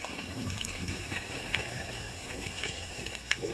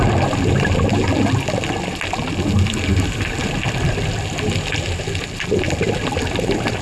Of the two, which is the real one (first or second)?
second